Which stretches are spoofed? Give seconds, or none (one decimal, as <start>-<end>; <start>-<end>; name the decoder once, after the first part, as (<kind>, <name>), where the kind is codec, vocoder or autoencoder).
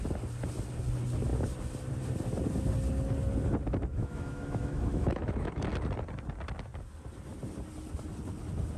3.9-5.7 (autoencoder, DAC-VAE)